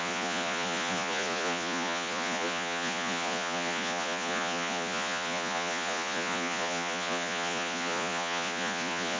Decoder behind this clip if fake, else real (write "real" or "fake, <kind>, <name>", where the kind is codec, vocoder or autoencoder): fake, vocoder, Vocos